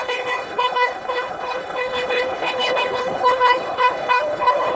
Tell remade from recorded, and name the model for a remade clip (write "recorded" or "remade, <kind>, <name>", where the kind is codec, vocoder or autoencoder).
remade, codec, HILCodec